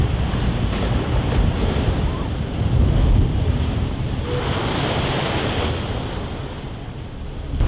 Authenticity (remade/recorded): recorded